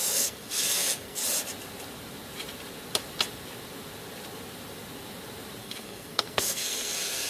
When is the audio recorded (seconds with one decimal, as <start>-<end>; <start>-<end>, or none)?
1.2-5.6